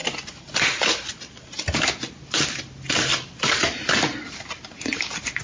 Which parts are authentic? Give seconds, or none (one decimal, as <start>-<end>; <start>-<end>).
0.0-5.4